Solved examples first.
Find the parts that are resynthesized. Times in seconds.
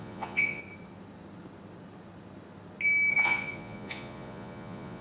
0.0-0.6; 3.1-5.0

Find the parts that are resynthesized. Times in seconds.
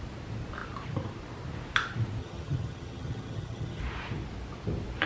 2.2-3.8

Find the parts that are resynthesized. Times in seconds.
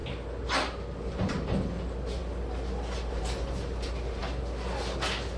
none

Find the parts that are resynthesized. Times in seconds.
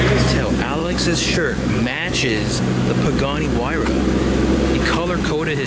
0.8-2.6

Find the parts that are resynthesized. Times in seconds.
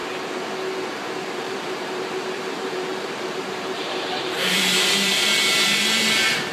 1.3-6.5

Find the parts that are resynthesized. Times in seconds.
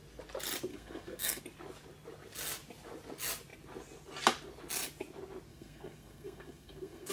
0.7-1.4; 5.5-7.1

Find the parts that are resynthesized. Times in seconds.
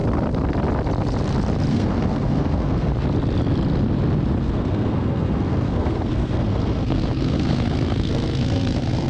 1.7-2.9; 4.4-9.1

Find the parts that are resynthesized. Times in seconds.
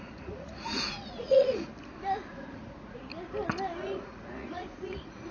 0.0-1.7; 2.3-3.0; 3.8-5.3